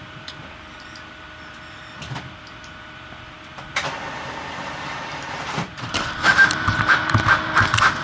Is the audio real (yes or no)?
no